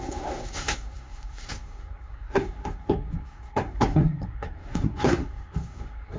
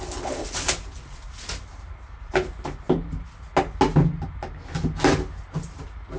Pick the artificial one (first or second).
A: first